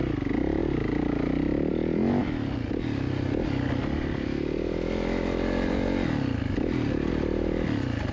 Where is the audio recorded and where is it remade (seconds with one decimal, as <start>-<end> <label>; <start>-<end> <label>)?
0.0-8.1 recorded